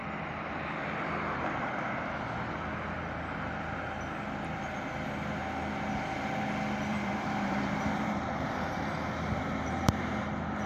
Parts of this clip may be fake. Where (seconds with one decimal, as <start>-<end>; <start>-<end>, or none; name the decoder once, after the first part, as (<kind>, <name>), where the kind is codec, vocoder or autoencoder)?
6.9-10.1 (vocoder, BigVGAN v2)